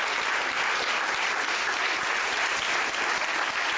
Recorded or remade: recorded